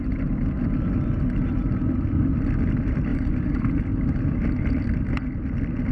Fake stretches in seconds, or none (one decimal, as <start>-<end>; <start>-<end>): 3.1-3.6